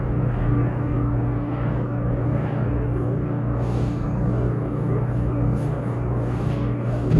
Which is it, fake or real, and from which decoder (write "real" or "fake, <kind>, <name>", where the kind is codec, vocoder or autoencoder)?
fake, codec, DAC